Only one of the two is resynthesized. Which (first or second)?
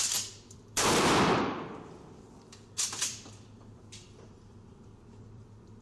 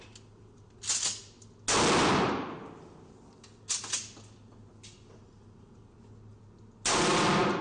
first